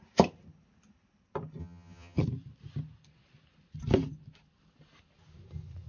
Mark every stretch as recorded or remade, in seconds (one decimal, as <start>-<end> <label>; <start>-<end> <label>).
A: 0.0-1.6 recorded; 1.6-2.2 remade; 2.2-5.9 recorded